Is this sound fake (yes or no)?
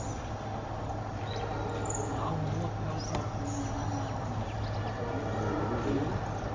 no